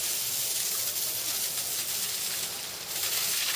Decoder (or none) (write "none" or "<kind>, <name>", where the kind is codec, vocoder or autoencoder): none